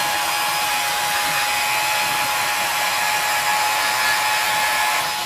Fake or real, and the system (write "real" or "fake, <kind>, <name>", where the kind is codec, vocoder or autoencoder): real